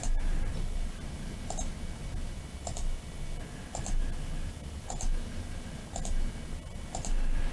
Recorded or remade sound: recorded